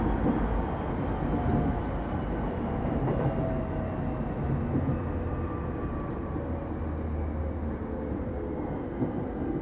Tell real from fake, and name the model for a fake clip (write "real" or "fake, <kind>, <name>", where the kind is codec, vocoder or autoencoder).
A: real